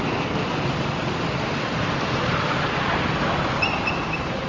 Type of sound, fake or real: real